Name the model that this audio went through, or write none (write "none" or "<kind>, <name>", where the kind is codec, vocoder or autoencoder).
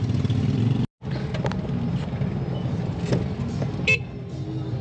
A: none